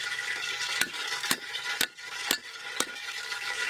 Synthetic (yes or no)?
yes